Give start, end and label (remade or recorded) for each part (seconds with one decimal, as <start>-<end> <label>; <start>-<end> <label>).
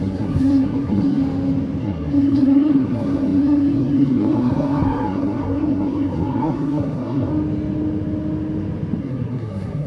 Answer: 0.0-1.2 remade; 1.2-1.8 recorded; 1.8-7.3 remade; 7.3-9.0 recorded; 9.0-9.9 remade